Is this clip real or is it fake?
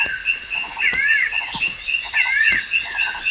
fake